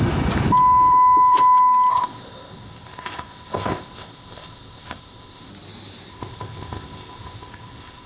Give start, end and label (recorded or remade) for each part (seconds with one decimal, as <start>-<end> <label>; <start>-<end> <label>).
0.0-1.9 recorded; 1.9-5.5 remade; 5.5-6.1 recorded; 6.1-8.1 remade